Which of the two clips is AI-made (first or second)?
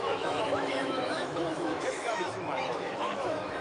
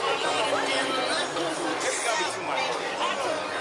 first